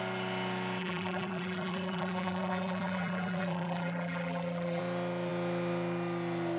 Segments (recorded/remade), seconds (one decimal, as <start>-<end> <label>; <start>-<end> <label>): 0.0-0.8 recorded; 0.8-4.8 remade; 4.8-6.6 recorded